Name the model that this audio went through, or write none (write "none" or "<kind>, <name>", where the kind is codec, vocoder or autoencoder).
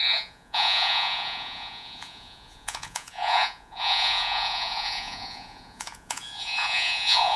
vocoder, Vocos